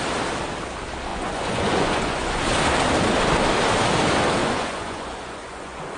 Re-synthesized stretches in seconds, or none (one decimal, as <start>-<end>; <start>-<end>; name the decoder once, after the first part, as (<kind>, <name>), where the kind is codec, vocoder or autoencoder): 1.1-2.4 (vocoder, Vocos); 4.4-6.0